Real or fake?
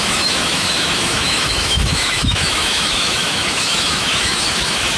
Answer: fake